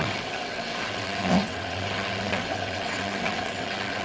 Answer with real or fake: fake